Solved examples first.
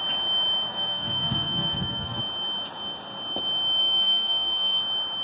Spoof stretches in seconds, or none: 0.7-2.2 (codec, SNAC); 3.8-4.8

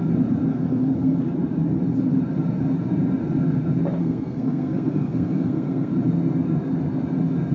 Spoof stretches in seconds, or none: 0.5-1.2 (codec, SNAC); 4.0-5.9

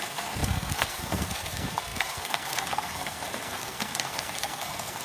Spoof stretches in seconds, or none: 0.0-5.0 (codec, SNAC)

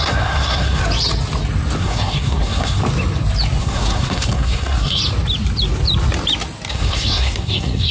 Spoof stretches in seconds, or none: 0.0-0.8 (codec, SNAC); 1.8-2.8; 3.6-5.0; 6.7-7.9

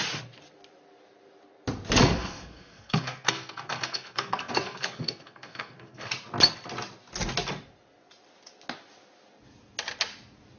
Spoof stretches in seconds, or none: 2.0-6.1 (codec, SNAC)

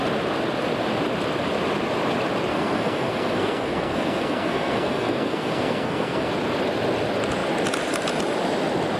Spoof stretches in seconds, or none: 2.5-6.3 (codec, SNAC)